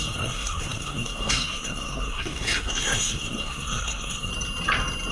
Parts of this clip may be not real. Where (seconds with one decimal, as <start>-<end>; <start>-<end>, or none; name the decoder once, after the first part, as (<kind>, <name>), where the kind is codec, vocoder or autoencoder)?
0.0-4.3 (codec, SNAC)